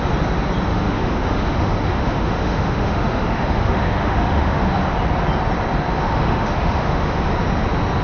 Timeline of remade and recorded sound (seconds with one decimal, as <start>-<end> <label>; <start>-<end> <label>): 0.0-0.7 recorded; 0.7-4.8 remade; 4.8-6.0 recorded; 6.0-7.3 remade; 7.3-8.0 recorded